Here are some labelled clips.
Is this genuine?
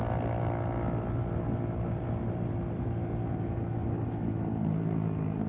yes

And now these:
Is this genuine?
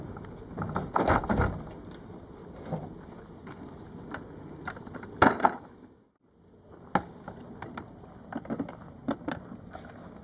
yes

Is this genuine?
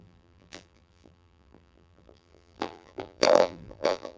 no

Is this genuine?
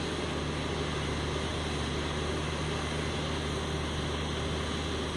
yes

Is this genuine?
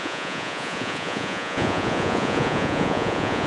no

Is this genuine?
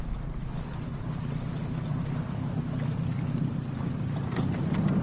yes